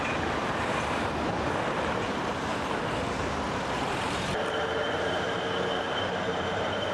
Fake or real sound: fake